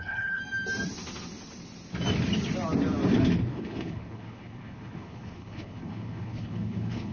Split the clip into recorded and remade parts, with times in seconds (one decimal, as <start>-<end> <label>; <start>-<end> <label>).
0.0-0.4 remade; 0.4-3.5 recorded; 3.5-7.1 remade